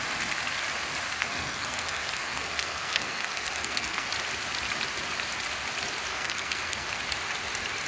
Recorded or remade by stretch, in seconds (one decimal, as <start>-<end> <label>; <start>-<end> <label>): 0.0-1.2 recorded; 1.2-4.1 remade; 4.1-6.1 recorded; 6.1-7.0 remade; 7.0-7.9 recorded